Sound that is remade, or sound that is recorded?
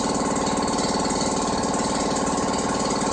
recorded